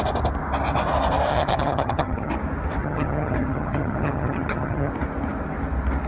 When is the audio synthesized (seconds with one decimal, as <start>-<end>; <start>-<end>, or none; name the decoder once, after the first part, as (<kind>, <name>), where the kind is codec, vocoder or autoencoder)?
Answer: 1.3-2.3 (vocoder, HiFi-GAN); 2.8-4.9